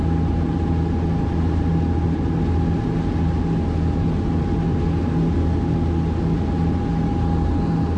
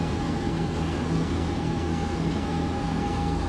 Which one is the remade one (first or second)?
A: second